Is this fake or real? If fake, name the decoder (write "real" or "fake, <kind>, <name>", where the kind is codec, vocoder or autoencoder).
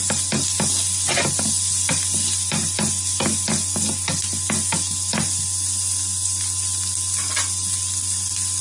real